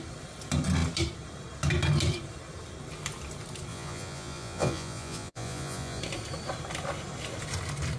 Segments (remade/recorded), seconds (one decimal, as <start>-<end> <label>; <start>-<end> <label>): 0.0-3.7 recorded; 3.7-6.0 remade; 6.0-8.0 recorded

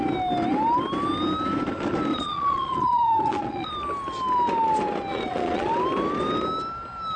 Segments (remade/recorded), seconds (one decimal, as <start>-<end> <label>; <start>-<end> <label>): 0.0-2.1 recorded; 2.1-3.7 remade; 3.7-5.1 recorded; 5.1-5.7 remade; 5.7-7.2 recorded